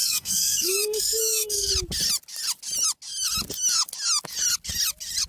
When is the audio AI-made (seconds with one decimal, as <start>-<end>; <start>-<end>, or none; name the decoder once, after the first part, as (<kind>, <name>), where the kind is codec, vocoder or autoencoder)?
0.0-1.7 (codec, SNAC)